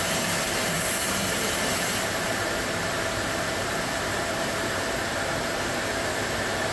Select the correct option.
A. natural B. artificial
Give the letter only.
B